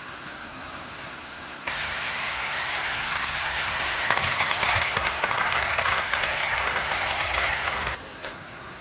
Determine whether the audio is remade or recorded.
remade